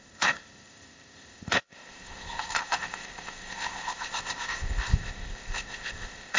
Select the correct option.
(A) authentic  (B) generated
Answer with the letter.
B